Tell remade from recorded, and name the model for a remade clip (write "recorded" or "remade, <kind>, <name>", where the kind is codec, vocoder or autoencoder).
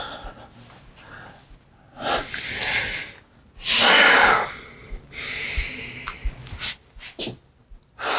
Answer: recorded